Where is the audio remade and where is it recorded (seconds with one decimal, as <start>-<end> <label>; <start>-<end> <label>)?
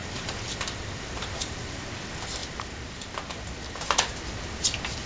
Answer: 0.0-1.8 remade; 1.8-5.1 recorded